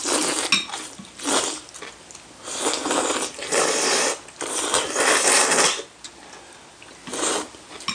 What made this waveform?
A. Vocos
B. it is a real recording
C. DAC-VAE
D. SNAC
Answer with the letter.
B